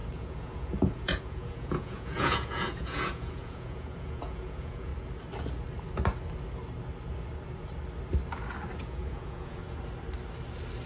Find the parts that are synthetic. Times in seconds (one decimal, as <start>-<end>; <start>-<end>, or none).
0.0-4.9; 8.8-9.6